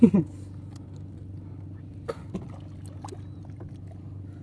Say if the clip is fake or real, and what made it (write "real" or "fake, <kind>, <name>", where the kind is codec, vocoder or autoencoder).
real